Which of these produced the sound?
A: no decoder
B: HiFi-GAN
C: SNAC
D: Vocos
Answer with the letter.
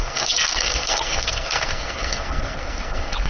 C